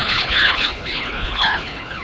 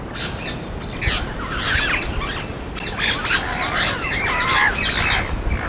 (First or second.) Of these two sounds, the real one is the second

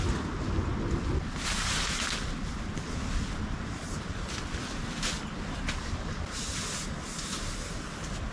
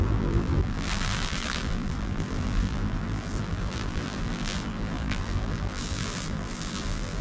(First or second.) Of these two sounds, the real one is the first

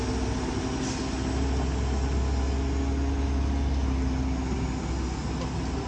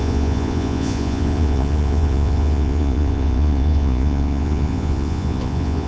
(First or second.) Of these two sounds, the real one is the first